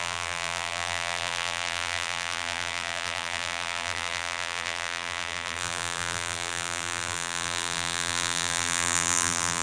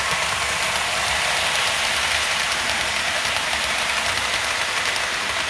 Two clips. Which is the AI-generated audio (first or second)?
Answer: first